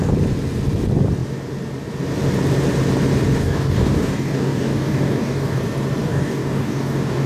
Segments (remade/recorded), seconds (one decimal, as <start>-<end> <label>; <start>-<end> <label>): 0.0-3.4 recorded; 3.4-5.6 remade; 5.6-6.0 recorded; 6.0-7.3 remade